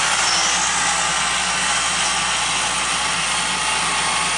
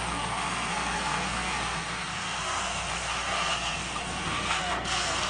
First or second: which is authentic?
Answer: first